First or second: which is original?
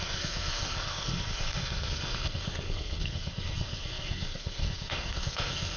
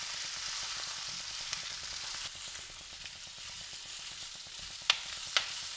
second